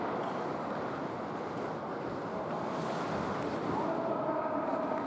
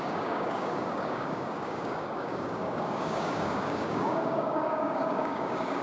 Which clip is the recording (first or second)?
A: first